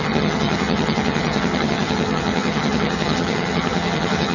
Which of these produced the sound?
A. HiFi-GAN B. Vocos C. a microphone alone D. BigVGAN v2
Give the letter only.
A